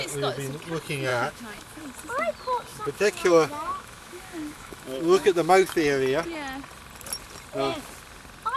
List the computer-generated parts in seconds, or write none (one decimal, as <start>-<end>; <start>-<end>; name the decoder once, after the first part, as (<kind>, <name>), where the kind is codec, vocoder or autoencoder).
1.1-1.8 (autoencoder, DAC-VAE); 2.7-5.7